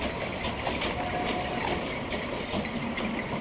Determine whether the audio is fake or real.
real